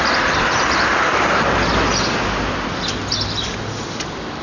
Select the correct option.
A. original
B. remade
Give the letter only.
A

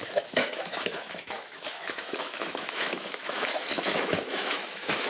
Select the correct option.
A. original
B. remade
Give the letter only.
B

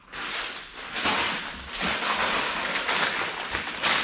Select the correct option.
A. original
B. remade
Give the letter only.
A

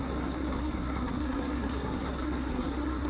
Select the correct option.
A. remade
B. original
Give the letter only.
A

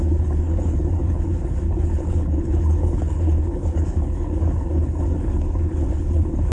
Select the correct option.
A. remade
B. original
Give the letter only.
A